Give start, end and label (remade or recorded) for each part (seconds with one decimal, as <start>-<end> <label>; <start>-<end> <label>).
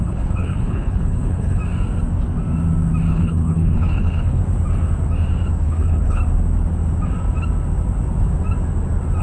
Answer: 0.0-1.6 remade; 1.6-3.1 recorded; 3.1-4.4 remade; 4.4-5.6 recorded; 5.6-6.2 remade; 6.2-9.2 recorded